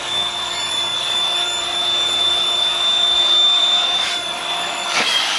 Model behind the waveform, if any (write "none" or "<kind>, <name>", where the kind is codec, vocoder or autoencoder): codec, DAC